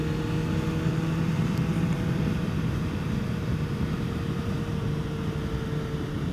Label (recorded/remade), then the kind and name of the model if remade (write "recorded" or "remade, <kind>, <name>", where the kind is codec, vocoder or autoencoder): recorded